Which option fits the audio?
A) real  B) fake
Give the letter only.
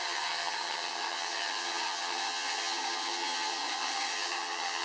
B